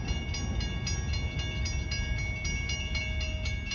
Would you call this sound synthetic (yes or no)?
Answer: no